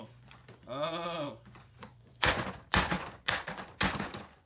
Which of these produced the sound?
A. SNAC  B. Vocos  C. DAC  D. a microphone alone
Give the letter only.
B